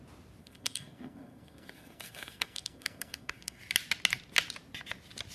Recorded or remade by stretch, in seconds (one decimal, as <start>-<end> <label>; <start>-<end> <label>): 0.0-0.4 recorded; 0.4-3.6 remade; 3.6-5.3 recorded